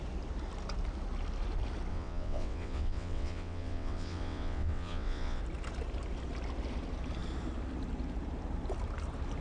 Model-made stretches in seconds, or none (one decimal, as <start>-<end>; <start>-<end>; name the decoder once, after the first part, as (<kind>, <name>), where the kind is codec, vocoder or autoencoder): 1.9-5.4 (vocoder, WaveNeXt)